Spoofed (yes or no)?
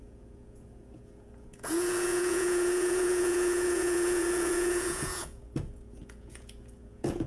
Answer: yes